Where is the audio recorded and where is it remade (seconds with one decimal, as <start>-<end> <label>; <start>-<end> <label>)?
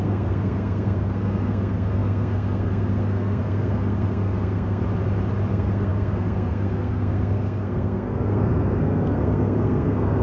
0.0-4.8 remade; 4.8-5.5 recorded; 5.5-10.2 remade